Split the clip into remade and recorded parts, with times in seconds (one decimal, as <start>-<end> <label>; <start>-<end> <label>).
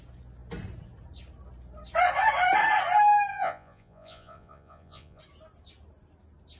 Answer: 0.0-3.3 recorded; 3.3-5.2 remade; 5.2-6.6 recorded